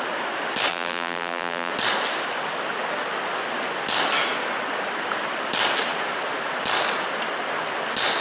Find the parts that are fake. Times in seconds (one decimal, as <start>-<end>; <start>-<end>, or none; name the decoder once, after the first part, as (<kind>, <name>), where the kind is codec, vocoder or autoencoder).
0.7-1.7 (vocoder, BigVGAN v2)